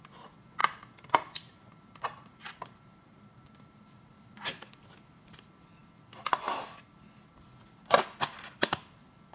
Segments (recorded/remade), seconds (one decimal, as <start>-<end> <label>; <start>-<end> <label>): 0.0-0.6 recorded; 0.6-5.2 remade; 5.2-9.3 recorded